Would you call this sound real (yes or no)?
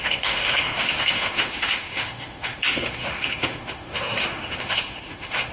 no